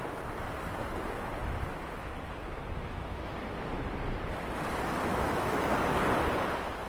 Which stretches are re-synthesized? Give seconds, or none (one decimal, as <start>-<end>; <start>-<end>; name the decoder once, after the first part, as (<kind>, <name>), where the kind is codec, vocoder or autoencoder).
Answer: 1.7-3.3 (autoencoder, DAC-VAE); 5.1-5.6